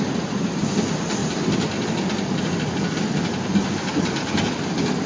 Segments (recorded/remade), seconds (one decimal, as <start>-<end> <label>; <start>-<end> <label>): 0.0-5.1 recorded